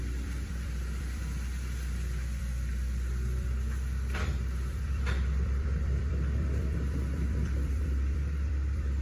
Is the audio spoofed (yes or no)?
yes